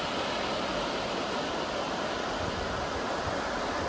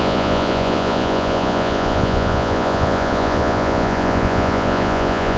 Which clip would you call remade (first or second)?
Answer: second